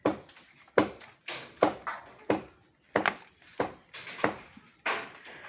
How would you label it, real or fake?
real